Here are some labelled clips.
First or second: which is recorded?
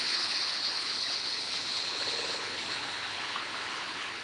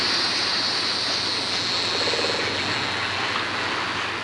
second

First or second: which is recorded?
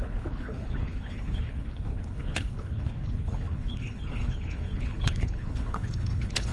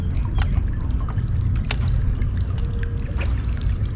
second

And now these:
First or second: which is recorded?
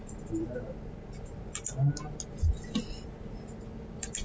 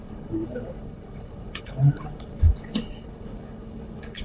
first